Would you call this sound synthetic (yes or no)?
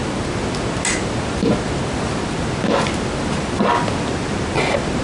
no